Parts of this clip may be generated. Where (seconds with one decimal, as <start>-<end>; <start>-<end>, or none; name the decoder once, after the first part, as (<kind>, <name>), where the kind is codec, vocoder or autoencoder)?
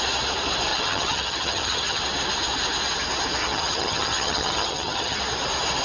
0.7-2.0 (vocoder, HiFi-GAN); 3.4-5.2